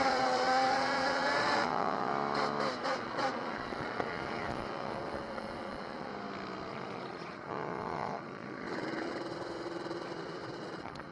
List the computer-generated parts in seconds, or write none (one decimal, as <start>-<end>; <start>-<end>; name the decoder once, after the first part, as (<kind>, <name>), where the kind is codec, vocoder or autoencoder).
0.0-2.1 (vocoder, Vocos); 2.8-6.1; 6.7-11.1